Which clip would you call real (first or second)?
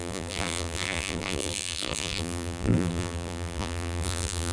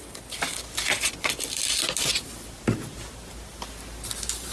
second